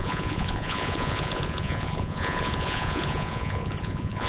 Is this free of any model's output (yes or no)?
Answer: no